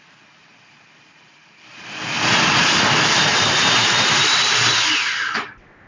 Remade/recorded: recorded